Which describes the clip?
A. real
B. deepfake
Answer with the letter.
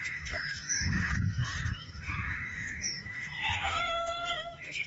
B